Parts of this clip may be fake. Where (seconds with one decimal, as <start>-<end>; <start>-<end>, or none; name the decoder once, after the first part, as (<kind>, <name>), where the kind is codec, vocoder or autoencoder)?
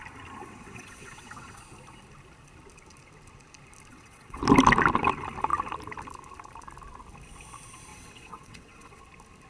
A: 0.4-1.6 (vocoder, WaveNeXt); 3.9-4.4; 7.9-9.0